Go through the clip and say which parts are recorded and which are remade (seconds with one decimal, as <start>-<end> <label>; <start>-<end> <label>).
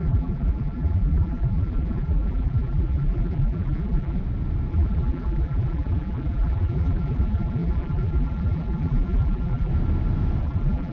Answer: 0.0-4.2 remade; 4.2-4.7 recorded; 4.7-9.7 remade; 9.7-10.4 recorded; 10.4-10.9 remade